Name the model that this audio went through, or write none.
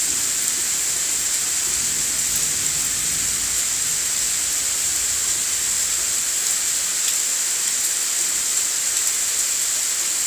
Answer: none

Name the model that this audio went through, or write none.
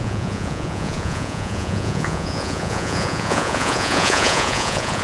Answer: vocoder, Vocos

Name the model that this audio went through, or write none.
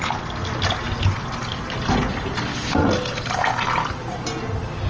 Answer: none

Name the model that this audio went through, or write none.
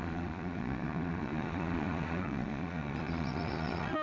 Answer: vocoder, Vocos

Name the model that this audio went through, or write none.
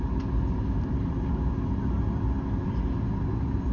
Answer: none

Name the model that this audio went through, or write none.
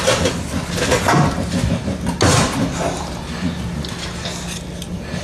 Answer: none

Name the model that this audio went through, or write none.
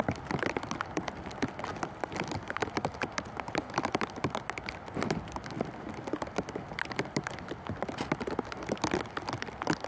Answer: none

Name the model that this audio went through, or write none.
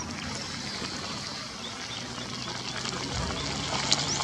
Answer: none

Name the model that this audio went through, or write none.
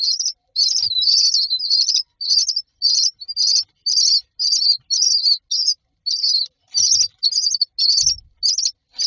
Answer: none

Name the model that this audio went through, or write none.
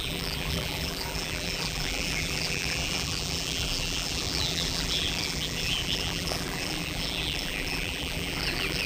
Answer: vocoder, BigVGAN v2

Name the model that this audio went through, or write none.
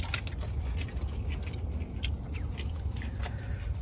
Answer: none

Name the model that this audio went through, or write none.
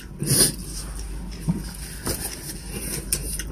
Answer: none